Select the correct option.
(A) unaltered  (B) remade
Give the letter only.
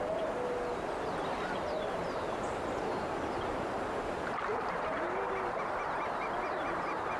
A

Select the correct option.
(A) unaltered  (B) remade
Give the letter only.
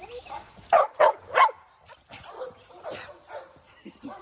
A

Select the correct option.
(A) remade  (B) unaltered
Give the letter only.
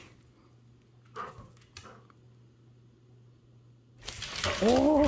B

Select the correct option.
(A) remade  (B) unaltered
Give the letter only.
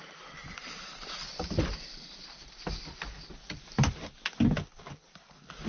B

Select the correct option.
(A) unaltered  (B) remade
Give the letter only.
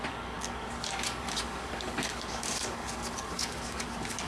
B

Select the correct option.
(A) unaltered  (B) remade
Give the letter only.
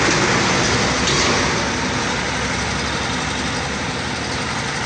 A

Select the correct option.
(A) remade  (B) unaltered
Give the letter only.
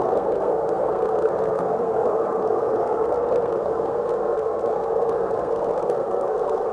A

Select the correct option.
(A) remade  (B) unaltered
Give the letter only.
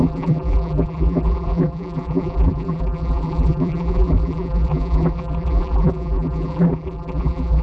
A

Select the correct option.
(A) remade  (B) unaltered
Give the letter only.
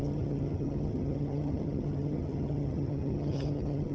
A